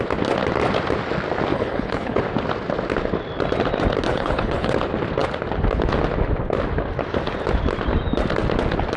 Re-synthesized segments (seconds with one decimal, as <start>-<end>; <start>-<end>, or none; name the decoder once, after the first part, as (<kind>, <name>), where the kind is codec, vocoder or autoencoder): 1.5-2.2 (codec, HILCodec); 4.1-4.7